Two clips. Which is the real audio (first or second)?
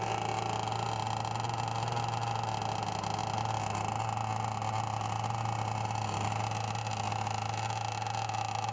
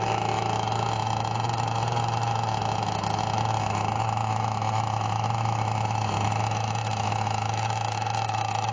first